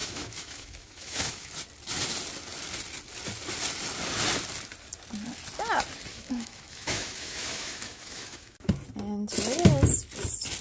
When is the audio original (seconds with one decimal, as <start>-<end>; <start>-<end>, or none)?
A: 1.5-6.1; 8.7-10.6